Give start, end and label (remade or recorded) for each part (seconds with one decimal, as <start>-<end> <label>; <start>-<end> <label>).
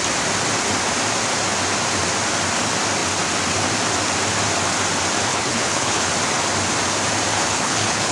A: 0.0-5.3 recorded; 5.3-6.1 remade; 6.1-7.3 recorded; 7.3-8.1 remade